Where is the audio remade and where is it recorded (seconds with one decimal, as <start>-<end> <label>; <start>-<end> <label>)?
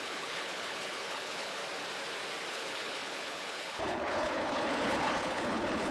0.0-1.6 remade; 1.6-2.5 recorded; 2.5-5.9 remade